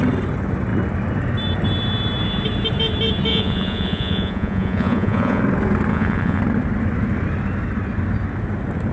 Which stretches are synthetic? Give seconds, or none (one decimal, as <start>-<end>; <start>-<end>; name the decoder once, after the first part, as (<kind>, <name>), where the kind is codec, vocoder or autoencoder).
3.3-5.4 (vocoder, Vocos); 5.9-6.4